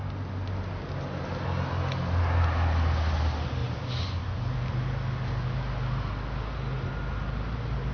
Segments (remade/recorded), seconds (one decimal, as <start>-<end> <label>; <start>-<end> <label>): 0.0-7.9 recorded